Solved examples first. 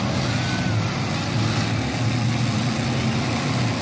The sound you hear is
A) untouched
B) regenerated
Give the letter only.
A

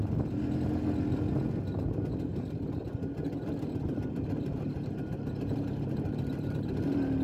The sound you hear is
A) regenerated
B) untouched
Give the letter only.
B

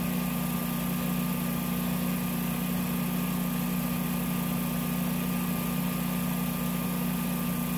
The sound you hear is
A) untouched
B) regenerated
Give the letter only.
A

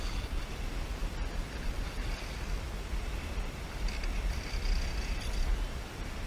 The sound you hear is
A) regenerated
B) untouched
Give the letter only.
B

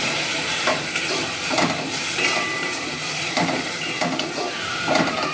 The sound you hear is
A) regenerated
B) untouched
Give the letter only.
A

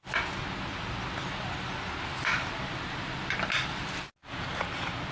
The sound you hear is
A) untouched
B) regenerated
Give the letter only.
A